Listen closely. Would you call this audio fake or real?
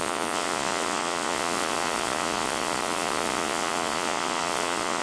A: fake